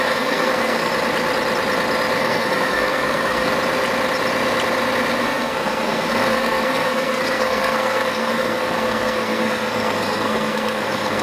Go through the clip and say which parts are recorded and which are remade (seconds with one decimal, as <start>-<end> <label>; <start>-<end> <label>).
0.0-0.9 remade; 0.9-2.2 recorded; 2.2-3.5 remade; 3.5-5.2 recorded; 5.2-11.2 remade